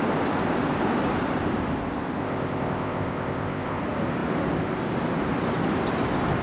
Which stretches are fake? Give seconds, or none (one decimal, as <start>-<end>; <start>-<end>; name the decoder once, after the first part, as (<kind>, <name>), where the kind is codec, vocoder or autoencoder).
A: 2.2-3.8 (codec, ZipCodec)